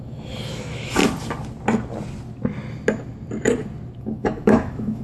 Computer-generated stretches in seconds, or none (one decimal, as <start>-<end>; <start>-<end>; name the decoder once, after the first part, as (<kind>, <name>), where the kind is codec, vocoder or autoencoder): 0.0-1.0 (autoencoder, DAC-VAE); 4.0-5.0